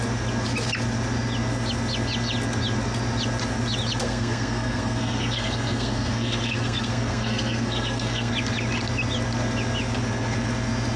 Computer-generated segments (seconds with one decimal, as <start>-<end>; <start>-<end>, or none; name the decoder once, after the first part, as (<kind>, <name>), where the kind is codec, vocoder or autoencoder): 4.0-8.3 (codec, SNAC)